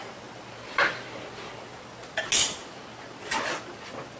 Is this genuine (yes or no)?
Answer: yes